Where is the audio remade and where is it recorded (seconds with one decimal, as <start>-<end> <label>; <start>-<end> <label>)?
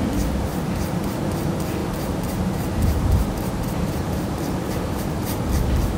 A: 0.0-0.5 recorded; 0.5-1.2 remade; 1.2-1.8 recorded; 1.8-5.4 remade; 5.4-6.0 recorded